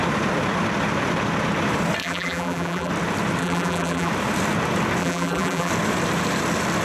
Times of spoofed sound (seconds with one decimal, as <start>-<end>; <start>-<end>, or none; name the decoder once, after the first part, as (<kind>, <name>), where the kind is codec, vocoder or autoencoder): 2.0-2.9 (vocoder, BigVGAN v2); 3.4-4.1; 5.0-5.7